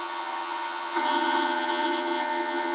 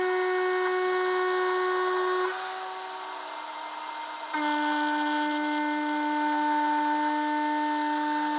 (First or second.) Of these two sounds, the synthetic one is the first